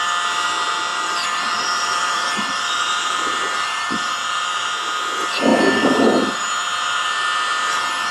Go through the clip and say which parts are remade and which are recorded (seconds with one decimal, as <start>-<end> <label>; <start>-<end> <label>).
0.0-0.9 recorded; 0.9-4.7 remade; 4.7-5.5 recorded; 5.5-6.5 remade; 6.5-8.1 recorded